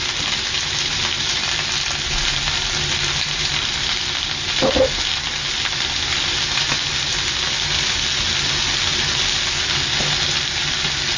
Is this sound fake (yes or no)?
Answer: no